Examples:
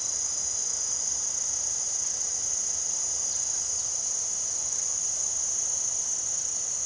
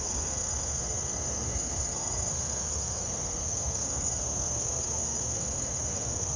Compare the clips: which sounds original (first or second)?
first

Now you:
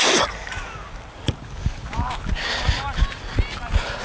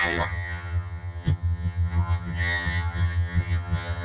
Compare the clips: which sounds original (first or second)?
first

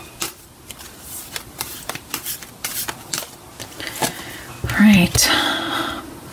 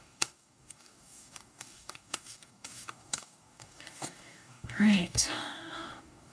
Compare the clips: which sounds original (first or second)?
first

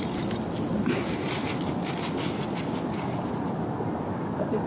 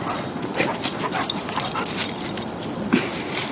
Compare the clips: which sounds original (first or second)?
first